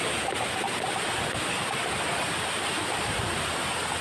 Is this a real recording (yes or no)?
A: yes